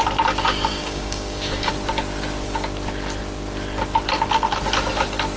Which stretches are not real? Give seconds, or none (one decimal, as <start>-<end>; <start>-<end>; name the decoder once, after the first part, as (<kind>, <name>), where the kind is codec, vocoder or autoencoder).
0.7-1.7 (codec, DAC)